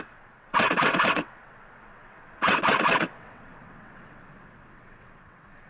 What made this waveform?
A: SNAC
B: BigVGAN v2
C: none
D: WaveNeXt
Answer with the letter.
D